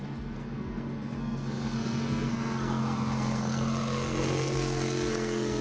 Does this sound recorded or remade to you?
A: remade